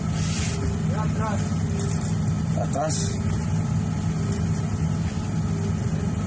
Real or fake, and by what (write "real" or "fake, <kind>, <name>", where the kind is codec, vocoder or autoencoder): real